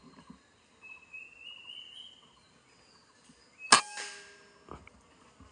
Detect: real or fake real